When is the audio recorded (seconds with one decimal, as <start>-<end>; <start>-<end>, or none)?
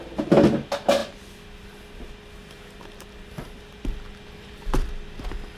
0.0-5.6